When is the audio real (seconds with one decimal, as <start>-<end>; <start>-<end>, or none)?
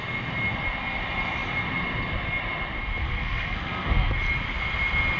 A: 0.0-3.0; 4.1-5.2